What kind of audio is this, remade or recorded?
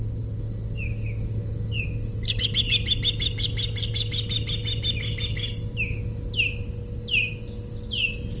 recorded